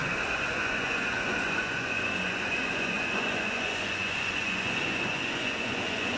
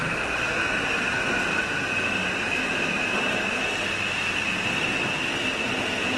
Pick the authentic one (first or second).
second